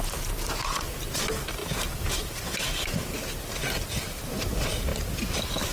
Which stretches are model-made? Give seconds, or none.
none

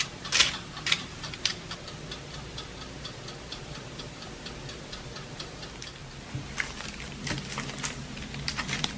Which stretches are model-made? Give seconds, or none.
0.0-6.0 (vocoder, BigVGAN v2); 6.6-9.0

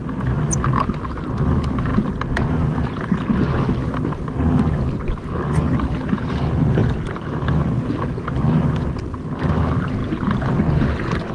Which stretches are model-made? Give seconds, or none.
none

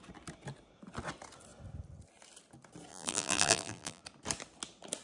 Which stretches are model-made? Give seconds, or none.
2.9-4.0 (vocoder, BigVGAN v2)

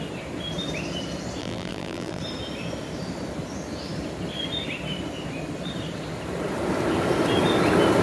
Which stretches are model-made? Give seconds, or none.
1.4-2.2 (vocoder, BigVGAN v2)